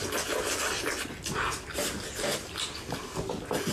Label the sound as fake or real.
real